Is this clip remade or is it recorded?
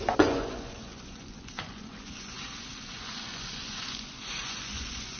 remade